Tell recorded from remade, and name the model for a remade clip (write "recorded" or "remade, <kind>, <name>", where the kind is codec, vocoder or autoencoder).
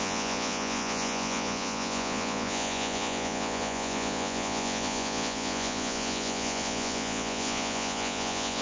remade, vocoder, Vocos